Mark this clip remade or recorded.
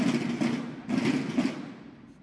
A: recorded